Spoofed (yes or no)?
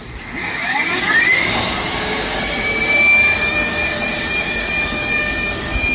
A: yes